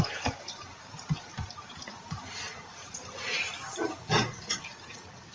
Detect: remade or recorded remade